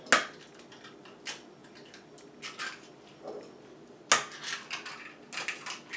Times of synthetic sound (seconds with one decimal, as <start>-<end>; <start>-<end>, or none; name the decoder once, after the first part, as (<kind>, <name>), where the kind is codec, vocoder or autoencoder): none